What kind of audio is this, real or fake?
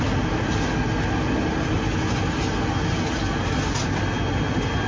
real